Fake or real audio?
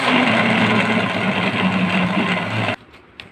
real